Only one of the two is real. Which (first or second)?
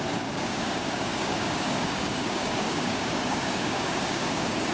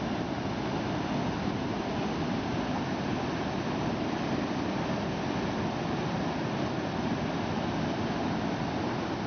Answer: second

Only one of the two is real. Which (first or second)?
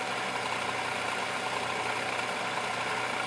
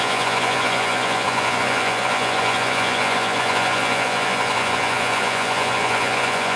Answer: first